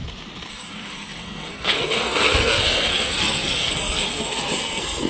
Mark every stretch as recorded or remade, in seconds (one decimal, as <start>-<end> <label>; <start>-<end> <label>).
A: 0.0-0.5 recorded; 0.5-5.1 remade